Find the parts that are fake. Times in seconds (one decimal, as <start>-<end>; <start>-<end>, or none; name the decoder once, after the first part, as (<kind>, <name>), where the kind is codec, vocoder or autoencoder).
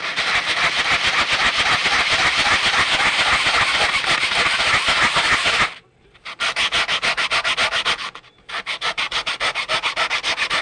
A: none